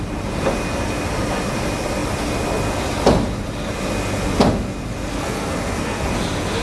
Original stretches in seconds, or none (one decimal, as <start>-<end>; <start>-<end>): 0.0-5.1; 6.1-6.6